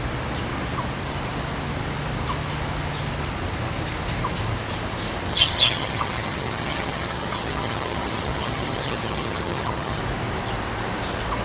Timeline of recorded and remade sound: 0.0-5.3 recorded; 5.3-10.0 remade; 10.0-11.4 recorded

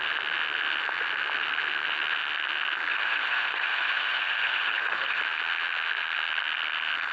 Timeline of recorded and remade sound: 0.0-2.9 recorded; 2.9-5.2 remade; 5.2-7.1 recorded

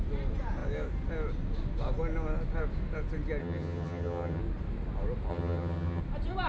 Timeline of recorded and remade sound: 0.0-3.4 recorded; 3.4-4.4 remade; 4.4-5.3 recorded; 5.3-6.0 remade; 6.0-6.5 recorded